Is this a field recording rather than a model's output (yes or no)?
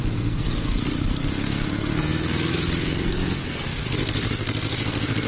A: no